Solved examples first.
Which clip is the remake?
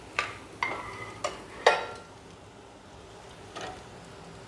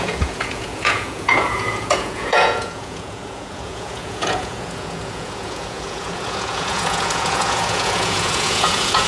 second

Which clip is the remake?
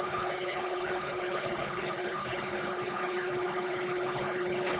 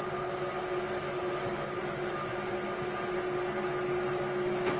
first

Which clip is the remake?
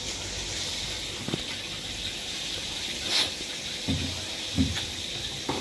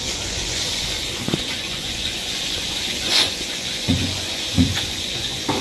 second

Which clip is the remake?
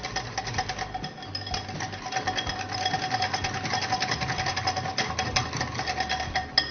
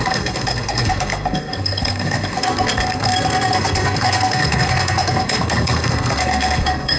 second